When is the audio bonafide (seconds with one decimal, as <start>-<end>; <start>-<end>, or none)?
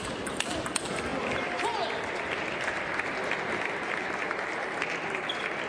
0.0-5.7